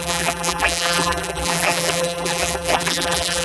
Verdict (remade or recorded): remade